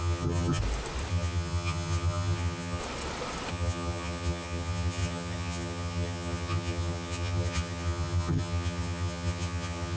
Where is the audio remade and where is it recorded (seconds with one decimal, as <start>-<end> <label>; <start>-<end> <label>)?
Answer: 0.0-0.6 remade; 0.6-1.1 recorded; 1.1-2.8 remade; 2.8-3.5 recorded; 3.5-10.0 remade